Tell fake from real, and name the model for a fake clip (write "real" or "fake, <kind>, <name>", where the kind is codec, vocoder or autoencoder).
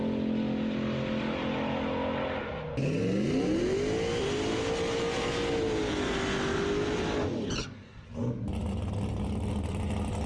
real